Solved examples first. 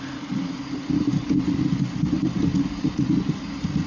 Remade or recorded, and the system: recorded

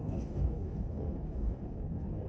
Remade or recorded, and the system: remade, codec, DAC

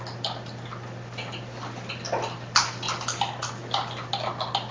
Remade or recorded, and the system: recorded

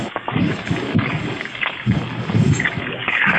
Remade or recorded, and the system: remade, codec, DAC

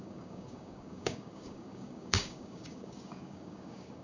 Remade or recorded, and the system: remade, codec, DAC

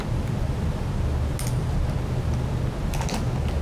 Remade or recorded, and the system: recorded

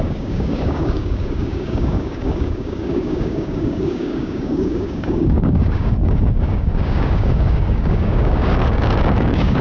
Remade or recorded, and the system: remade, codec, DAC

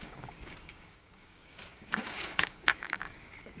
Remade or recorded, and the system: remade, codec, DAC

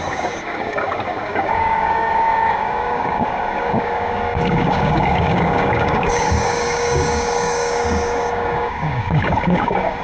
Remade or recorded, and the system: remade, codec, DAC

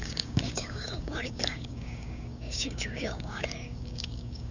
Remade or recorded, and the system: remade, codec, DAC